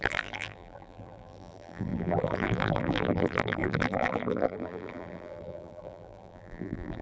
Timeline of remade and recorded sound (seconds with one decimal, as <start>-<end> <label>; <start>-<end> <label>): 0.0-7.0 remade